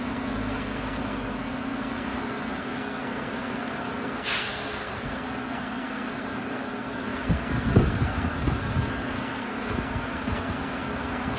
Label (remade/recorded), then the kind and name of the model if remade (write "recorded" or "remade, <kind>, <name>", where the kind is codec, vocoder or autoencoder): remade, codec, SNAC